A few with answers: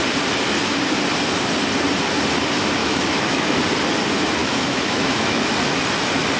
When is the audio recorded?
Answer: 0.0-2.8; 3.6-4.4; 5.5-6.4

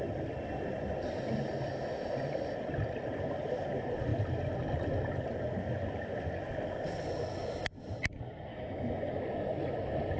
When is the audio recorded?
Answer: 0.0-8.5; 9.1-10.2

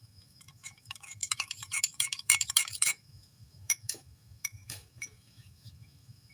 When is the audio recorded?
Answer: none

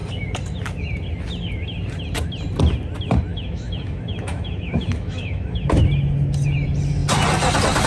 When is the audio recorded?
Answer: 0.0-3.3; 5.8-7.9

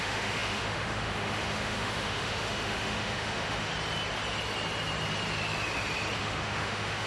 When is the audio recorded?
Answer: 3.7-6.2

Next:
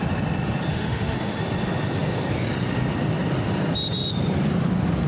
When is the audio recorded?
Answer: 0.0-0.7; 1.4-5.1